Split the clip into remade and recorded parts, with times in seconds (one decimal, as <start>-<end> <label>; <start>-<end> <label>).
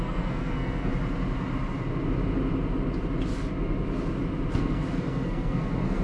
0.0-0.9 remade; 0.9-4.5 recorded; 4.5-6.0 remade